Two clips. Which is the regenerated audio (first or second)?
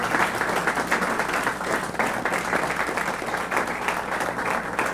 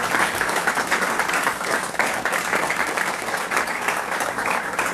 second